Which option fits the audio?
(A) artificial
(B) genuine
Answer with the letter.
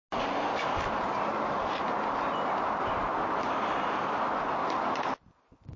B